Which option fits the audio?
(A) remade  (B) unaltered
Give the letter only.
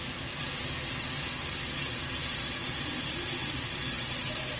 B